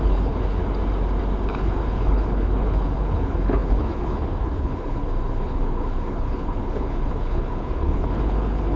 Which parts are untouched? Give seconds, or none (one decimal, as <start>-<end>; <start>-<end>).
0.6-1.5